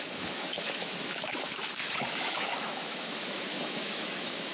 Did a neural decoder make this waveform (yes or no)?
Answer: yes